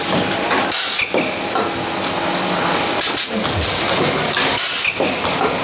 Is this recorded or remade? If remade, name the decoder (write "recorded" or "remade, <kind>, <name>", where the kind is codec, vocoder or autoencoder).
recorded